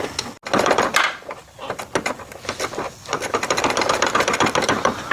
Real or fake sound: real